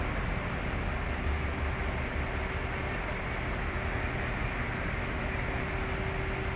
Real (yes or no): yes